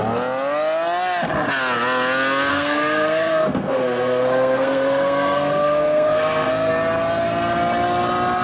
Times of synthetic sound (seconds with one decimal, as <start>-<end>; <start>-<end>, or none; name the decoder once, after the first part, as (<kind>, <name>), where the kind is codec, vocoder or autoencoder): 2.5-6.7 (codec, SNAC)